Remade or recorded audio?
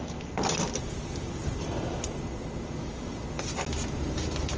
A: recorded